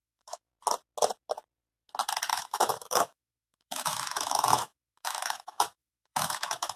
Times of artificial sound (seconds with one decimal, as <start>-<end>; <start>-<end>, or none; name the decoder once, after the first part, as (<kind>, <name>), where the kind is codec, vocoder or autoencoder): 0.0-0.5 (autoencoder, DAC-VAE); 2.3-6.8